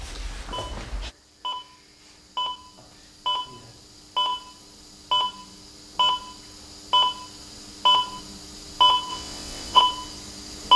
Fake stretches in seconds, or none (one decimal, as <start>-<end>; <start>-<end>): 9.1-9.8